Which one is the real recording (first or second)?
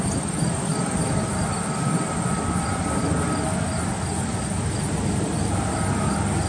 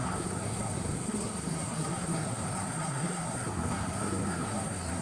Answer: first